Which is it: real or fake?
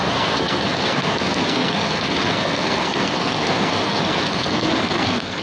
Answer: fake